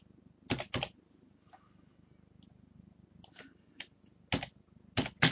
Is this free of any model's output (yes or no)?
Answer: yes